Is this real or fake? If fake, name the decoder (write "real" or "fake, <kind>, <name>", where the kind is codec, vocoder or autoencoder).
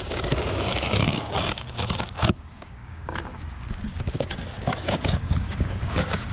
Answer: fake, codec, DAC